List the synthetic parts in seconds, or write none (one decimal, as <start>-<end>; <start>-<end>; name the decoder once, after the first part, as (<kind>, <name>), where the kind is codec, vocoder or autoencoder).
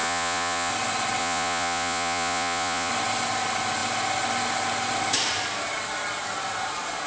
0.0-0.7 (vocoder, Vocos); 1.2-2.9